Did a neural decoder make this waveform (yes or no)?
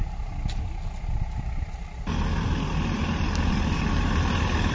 no